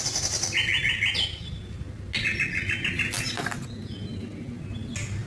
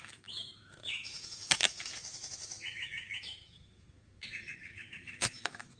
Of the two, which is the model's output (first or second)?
second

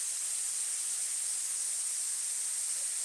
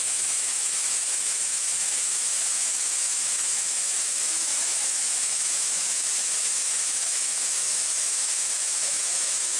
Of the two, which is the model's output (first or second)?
second